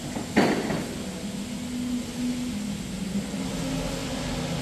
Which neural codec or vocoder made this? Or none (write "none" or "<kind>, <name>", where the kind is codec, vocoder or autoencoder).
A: none